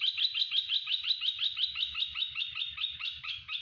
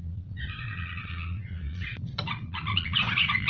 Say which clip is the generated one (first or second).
second